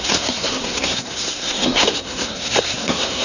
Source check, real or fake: fake